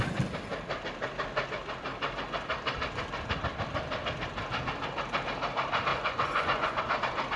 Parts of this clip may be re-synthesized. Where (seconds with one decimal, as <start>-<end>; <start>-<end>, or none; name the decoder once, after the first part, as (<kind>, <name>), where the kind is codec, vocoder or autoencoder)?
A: 5.9-6.8 (vocoder, Vocos)